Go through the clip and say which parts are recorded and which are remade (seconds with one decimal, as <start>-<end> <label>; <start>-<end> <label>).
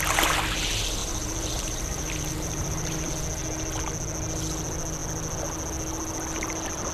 0.0-1.0 recorded; 1.0-3.1 remade; 3.1-6.9 recorded